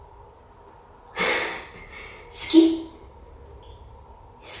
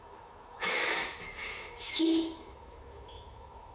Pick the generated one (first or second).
second